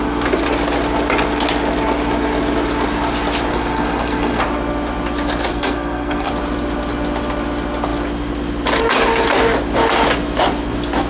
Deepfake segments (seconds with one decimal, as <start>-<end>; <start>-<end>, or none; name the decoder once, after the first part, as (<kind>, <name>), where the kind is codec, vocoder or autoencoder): 3.5-4.4 (codec, SNAC); 5.5-6.3